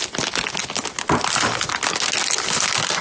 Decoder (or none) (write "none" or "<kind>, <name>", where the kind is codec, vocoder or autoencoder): none